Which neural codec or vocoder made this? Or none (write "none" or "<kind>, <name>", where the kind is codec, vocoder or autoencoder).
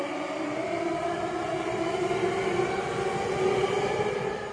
none